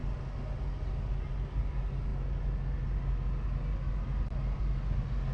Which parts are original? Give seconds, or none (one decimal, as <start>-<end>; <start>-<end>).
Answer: 0.0-5.3